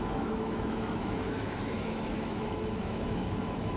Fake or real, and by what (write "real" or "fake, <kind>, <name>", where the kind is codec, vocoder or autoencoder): fake, autoencoder, DAC-VAE